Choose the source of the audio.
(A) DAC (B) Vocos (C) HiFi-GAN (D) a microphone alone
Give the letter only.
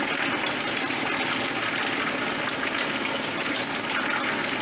D